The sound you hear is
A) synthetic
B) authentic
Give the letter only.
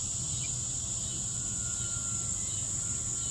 B